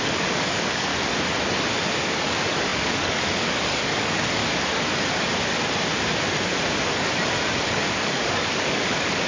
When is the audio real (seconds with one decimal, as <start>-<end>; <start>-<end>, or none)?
0.9-2.0; 4.4-7.7